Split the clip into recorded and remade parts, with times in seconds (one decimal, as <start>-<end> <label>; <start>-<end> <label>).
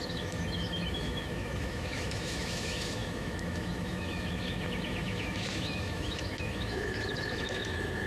0.0-8.1 remade